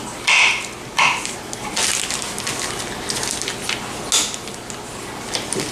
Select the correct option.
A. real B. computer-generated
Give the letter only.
A